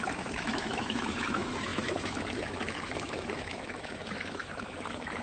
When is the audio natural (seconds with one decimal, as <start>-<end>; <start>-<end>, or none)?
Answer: none